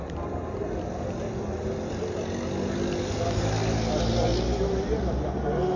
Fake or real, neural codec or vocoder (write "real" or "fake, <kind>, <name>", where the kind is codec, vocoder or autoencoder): real